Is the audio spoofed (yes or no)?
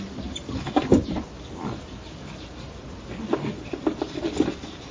no